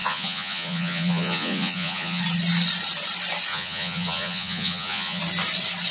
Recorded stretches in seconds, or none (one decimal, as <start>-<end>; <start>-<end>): 2.2-3.5; 5.2-5.9